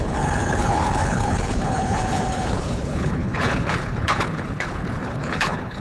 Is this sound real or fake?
fake